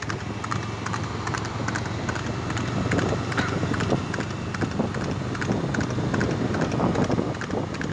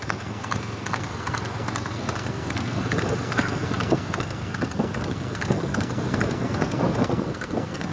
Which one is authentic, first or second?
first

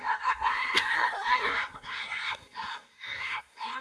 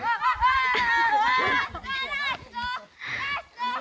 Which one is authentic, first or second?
second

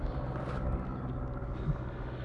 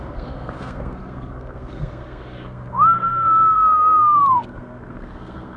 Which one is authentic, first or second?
first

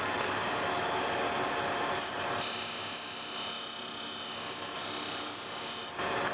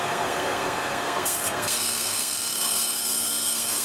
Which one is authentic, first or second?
first